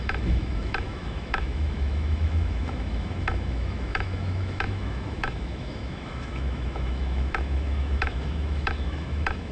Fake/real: fake